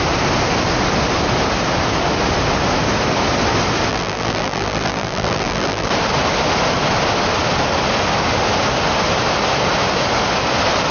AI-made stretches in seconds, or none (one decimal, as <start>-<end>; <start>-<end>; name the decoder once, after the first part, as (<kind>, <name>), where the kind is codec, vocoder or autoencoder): 3.9-5.9 (vocoder, BigVGAN v2)